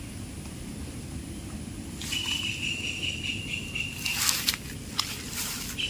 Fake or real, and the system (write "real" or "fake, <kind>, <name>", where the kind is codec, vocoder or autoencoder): real